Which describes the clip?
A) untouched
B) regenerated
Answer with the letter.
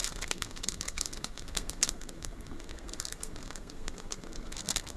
B